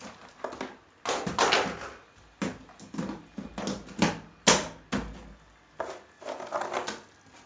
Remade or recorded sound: recorded